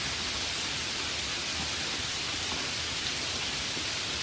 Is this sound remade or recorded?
recorded